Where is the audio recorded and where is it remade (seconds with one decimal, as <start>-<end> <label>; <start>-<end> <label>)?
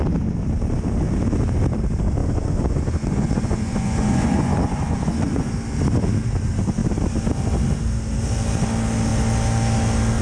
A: 0.0-2.2 recorded; 2.2-5.5 remade; 5.5-10.2 recorded